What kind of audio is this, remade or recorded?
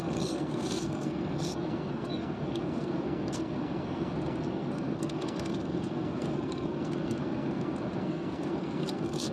remade